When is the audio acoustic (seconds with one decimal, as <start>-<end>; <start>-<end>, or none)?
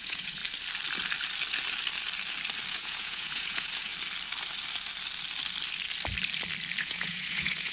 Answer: 0.4-2.7; 3.9-6.8